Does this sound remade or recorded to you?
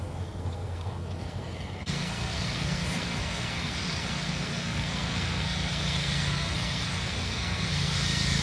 remade